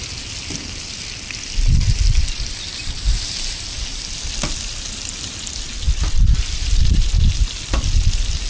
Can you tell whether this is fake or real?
real